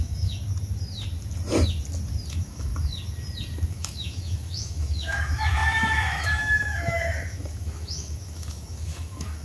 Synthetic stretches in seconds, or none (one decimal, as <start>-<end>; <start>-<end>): 0.0-0.4; 2.3-2.7; 3.7-9.4